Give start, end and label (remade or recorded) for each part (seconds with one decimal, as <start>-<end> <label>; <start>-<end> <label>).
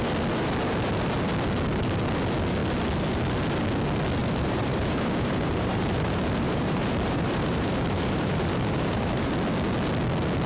0.0-4.2 recorded; 4.2-9.3 remade; 9.3-10.5 recorded